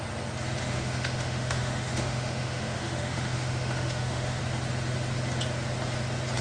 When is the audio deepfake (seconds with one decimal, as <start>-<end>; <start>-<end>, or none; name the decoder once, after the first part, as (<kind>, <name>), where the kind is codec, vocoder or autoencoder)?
0.6-4.4 (autoencoder, DAC-VAE)

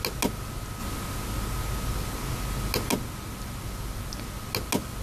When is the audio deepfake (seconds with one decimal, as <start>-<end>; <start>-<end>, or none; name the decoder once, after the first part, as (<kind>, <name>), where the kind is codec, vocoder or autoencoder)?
none

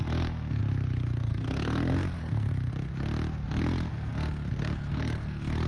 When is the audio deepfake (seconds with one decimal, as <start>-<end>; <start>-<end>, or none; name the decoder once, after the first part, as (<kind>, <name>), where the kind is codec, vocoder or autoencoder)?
0.0-0.6 (codec, SNAC); 1.2-2.5; 3.5-5.7

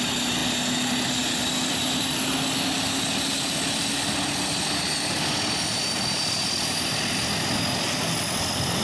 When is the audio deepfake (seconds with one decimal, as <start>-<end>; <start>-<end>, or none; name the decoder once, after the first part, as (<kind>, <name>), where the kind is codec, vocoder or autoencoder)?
none

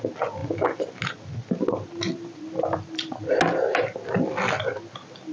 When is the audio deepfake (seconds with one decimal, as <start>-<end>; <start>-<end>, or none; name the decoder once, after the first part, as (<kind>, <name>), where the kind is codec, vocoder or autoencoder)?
none

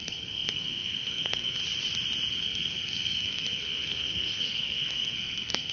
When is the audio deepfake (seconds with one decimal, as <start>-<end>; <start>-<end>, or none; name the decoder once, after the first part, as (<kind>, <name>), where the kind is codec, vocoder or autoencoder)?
0.0-1.6 (codec, SNAC); 2.3-5.7

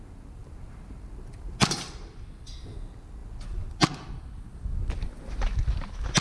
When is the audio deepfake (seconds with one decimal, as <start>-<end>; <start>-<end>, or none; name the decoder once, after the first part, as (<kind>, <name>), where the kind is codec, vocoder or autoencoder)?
none